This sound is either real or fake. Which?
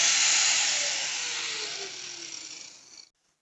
real